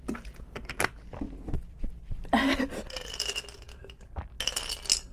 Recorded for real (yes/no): yes